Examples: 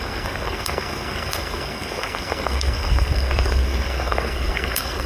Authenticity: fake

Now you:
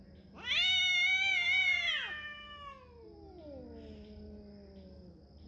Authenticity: real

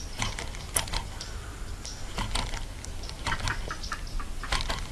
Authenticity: real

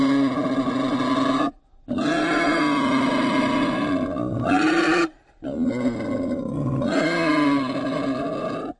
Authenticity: real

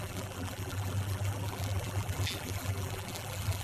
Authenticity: fake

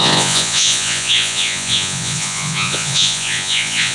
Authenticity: fake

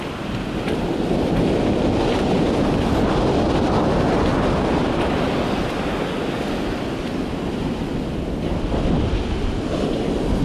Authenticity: real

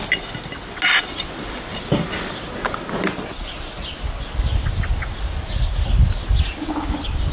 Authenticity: real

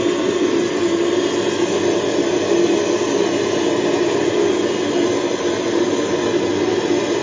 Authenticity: real